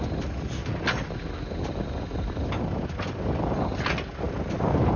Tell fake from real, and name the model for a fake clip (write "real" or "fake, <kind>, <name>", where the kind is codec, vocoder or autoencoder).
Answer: real